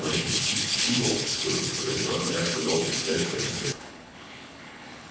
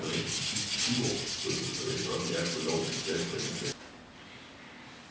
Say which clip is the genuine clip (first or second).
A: second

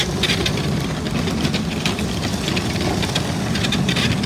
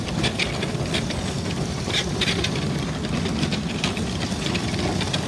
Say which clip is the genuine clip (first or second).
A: first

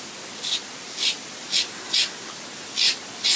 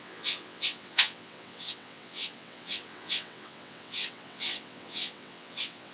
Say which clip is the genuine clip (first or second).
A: first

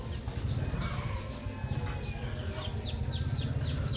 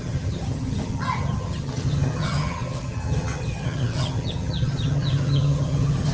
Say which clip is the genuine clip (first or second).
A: first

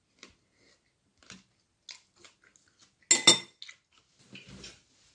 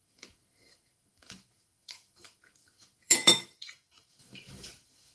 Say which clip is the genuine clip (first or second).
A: first